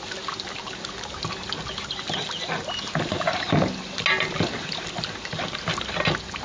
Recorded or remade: recorded